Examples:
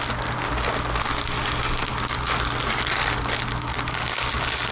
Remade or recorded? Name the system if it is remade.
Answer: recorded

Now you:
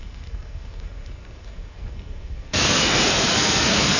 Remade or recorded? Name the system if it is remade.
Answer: remade, codec, SNAC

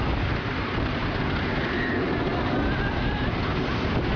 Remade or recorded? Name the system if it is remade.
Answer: recorded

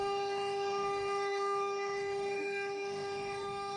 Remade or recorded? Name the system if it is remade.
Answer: remade, autoencoder, DAC-VAE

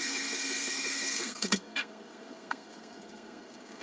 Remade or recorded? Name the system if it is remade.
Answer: remade, codec, SNAC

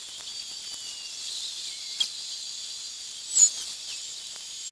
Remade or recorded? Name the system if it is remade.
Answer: recorded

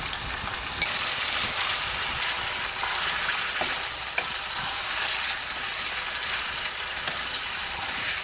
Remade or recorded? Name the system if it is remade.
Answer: recorded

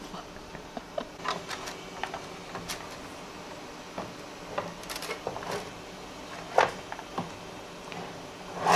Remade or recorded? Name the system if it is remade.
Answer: recorded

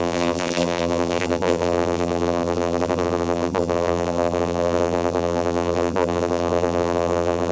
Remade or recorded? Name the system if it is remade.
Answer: remade, vocoder, BigVGAN v2